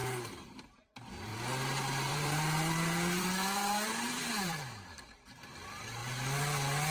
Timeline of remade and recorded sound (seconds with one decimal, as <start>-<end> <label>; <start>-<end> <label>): 0.0-1.3 remade; 1.3-2.1 recorded; 2.1-6.0 remade; 6.0-6.9 recorded